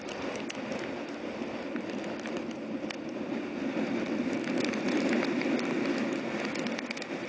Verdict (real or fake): real